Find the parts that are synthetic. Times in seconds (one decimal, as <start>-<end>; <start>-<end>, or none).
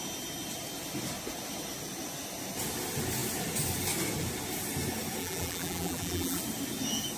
5.2-6.4